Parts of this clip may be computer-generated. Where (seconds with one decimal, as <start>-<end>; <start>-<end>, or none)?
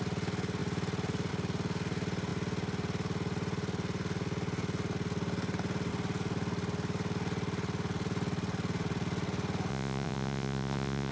9.7-11.1